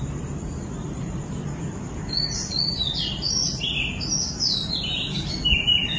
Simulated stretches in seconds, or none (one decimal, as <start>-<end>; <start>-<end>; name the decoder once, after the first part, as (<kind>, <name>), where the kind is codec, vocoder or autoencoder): none